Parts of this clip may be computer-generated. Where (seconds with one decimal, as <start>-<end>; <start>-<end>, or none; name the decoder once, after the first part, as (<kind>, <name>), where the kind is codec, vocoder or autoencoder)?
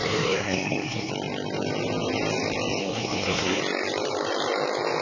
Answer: 0.0-1.1 (codec, SNAC); 2.8-3.6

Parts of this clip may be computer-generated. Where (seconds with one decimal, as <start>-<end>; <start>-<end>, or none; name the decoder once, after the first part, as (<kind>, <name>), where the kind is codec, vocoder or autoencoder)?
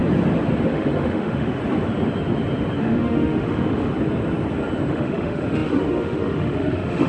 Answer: 0.7-1.6 (autoencoder, DAC-VAE); 2.8-3.9; 4.9-7.1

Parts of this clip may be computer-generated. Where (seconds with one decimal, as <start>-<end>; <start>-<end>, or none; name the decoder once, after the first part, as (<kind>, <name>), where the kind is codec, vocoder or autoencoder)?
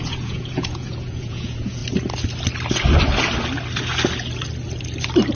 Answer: 0.0-1.8 (vocoder, Vocos)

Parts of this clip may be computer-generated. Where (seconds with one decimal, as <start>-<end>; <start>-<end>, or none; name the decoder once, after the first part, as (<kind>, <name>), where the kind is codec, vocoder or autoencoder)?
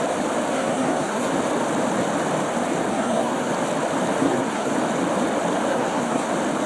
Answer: 0.5-1.3 (codec, SNAC); 2.9-3.5; 4.2-4.7; 5.7-6.3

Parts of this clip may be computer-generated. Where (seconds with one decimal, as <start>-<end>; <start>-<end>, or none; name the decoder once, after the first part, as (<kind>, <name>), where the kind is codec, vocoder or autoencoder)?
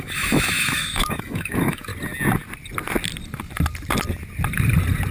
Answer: 0.0-1.9 (autoencoder, DAC-VAE)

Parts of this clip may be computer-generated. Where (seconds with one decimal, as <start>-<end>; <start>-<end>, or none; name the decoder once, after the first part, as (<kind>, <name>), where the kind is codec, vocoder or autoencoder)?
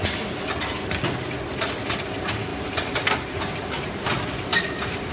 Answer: none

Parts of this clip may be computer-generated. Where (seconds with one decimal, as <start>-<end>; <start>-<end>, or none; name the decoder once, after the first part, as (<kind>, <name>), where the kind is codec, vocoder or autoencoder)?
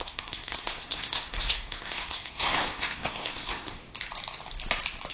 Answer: 0.0-3.8 (codec, SNAC)